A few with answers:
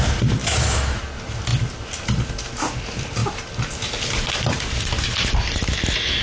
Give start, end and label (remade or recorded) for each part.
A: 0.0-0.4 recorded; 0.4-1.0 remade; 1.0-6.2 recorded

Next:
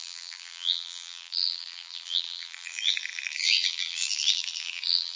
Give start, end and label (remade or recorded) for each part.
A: 0.0-5.2 remade

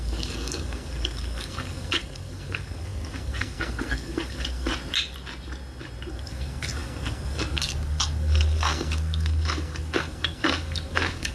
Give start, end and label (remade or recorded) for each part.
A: 0.0-4.7 remade; 4.7-6.1 recorded; 6.1-11.3 remade

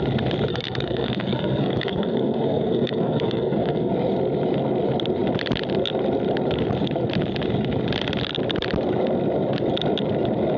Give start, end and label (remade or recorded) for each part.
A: 0.0-0.5 recorded; 0.5-3.9 remade; 3.9-10.6 recorded

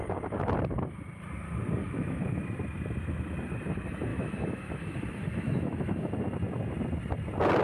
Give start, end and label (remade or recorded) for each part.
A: 0.0-1.8 recorded; 1.8-2.4 remade; 2.4-4.1 recorded; 4.1-6.1 remade; 6.1-7.6 recorded

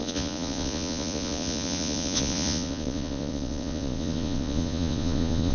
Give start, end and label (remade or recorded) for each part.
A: 0.0-5.5 remade

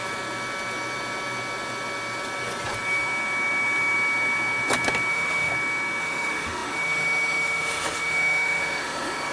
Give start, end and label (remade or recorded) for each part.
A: 0.0-5.1 recorded; 5.1-5.5 remade; 5.5-6.0 recorded; 6.0-9.3 remade

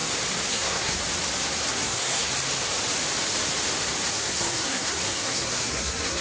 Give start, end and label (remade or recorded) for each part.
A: 0.0-0.5 recorded; 0.5-0.9 remade; 0.9-1.7 recorded; 1.7-2.3 remade; 2.3-4.1 recorded; 4.1-6.2 remade